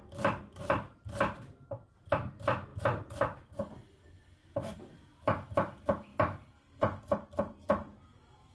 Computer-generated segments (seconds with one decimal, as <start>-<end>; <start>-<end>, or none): 4.4-5.2